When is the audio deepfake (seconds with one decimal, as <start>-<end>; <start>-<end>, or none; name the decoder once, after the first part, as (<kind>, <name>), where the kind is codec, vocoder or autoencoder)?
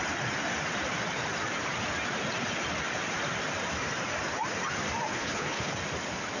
5.1-5.7 (codec, HILCodec)